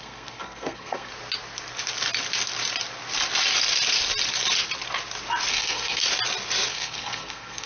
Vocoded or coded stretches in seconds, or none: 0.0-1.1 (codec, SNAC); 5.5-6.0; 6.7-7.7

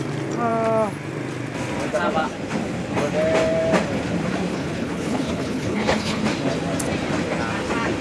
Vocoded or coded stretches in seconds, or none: 4.5-6.2 (codec, HILCodec)

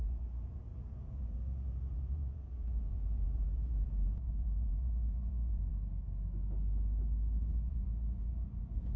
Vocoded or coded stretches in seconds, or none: 0.0-5.7 (vocoder, Vocos); 7.7-9.0